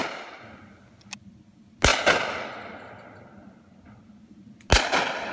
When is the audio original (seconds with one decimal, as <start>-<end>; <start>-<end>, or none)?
0.0-5.3